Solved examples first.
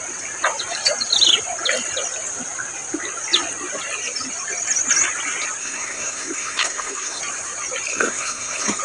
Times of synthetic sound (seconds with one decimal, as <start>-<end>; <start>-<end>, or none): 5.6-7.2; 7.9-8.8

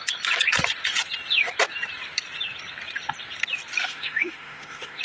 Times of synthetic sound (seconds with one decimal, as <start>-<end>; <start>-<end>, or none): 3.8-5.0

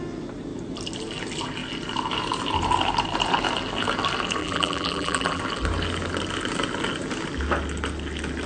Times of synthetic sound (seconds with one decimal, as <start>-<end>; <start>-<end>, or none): 4.4-5.4

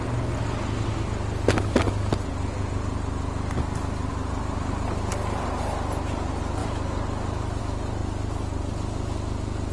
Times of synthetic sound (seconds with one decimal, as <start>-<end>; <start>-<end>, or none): 4.1-5.0; 6.6-7.6; 8.0-8.6

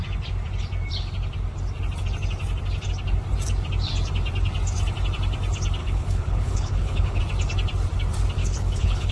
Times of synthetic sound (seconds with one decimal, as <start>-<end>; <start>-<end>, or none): 5.8-7.2; 8.4-9.1